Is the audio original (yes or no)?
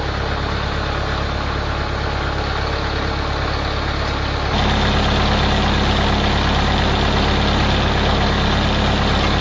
yes